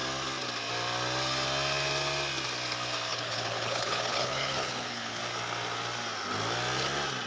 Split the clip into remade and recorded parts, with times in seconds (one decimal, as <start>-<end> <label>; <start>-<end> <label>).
0.0-3.1 recorded; 3.1-5.2 remade; 5.2-7.3 recorded